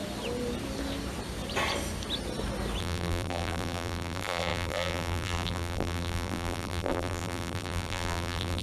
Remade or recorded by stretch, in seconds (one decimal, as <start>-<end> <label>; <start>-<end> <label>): 0.0-2.8 recorded; 2.8-8.6 remade